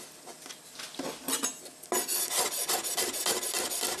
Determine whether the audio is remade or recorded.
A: recorded